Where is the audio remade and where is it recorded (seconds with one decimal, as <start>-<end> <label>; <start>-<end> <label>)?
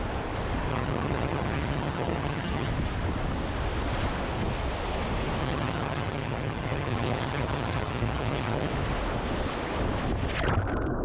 0.0-0.7 recorded; 0.7-2.7 remade; 2.7-5.4 recorded; 5.4-8.7 remade; 8.7-11.0 recorded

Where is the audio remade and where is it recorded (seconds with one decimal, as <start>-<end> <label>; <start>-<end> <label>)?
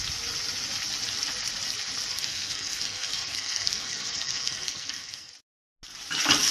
0.0-2.1 recorded; 2.1-5.3 remade; 5.3-6.5 recorded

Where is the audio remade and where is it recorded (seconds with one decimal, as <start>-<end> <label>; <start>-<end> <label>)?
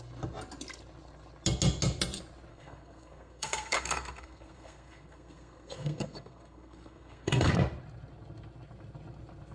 0.0-2.5 recorded; 2.5-7.5 remade; 7.5-9.5 recorded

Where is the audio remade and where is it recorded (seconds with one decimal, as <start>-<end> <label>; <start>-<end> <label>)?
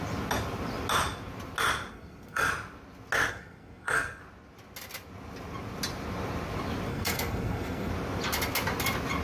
0.0-1.9 recorded; 1.9-2.5 remade; 2.5-3.3 recorded; 3.3-4.2 remade; 4.2-6.9 recorded; 6.9-7.9 remade; 7.9-9.2 recorded